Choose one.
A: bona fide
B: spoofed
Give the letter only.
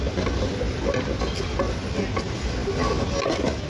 A